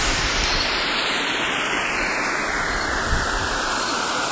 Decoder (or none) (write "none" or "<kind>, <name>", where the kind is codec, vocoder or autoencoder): vocoder, BigVGAN v2